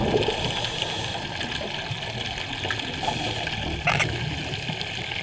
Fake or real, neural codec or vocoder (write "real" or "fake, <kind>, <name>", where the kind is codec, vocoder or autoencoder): real